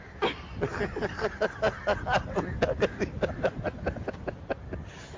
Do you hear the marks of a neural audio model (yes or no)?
no